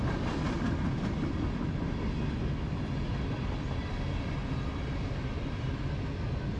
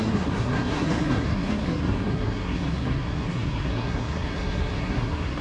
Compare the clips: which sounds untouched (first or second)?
first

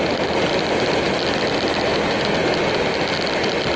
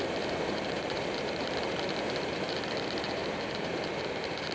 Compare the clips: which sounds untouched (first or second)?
first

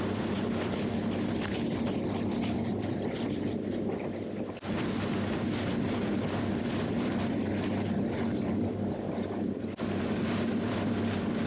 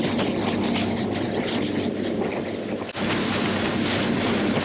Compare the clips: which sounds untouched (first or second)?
second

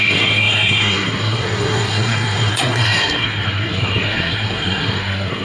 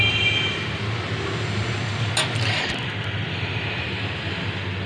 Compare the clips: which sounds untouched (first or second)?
second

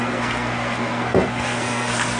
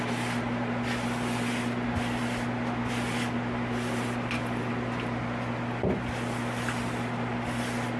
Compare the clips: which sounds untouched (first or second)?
second